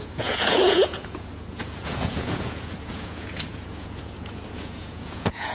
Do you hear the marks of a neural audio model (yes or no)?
yes